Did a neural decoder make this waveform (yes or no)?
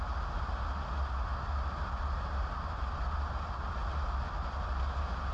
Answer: no